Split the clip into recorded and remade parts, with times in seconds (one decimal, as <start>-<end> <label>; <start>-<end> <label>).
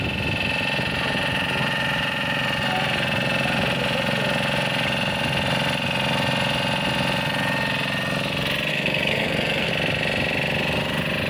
0.0-8.7 recorded; 8.7-9.7 remade; 9.7-11.3 recorded